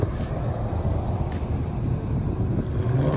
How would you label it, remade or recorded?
recorded